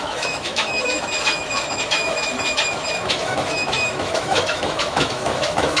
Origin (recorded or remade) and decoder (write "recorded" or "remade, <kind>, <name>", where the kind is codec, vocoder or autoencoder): remade, autoencoder, DAC-VAE